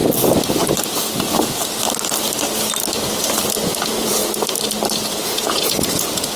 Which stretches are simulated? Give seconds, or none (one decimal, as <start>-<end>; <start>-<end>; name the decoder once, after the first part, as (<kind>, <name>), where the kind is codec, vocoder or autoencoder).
3.8-4.2 (vocoder, Vocos); 5.1-6.4